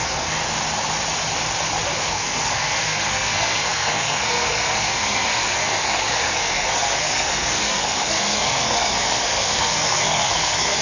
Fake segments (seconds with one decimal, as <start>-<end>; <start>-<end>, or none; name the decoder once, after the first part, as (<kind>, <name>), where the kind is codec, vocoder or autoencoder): 0.0-0.4 (codec, SNAC); 2.1-10.8